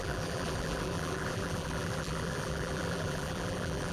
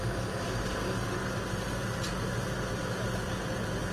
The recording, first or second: second